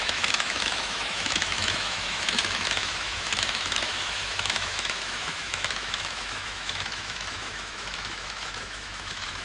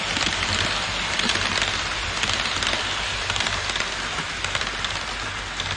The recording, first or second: second